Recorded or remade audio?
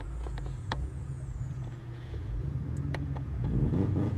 remade